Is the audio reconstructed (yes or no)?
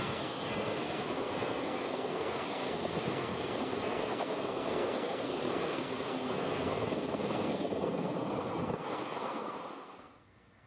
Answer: yes